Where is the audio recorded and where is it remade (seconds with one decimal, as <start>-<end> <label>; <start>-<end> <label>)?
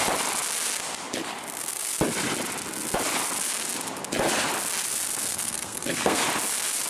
0.0-5.3 recorded; 5.3-6.2 remade; 6.2-6.9 recorded